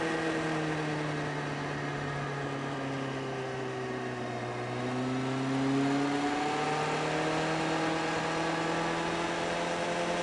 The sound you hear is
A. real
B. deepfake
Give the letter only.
A